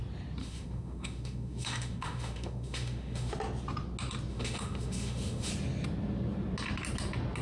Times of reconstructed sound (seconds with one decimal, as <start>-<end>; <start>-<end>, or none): 0.4-3.3; 4.3-5.5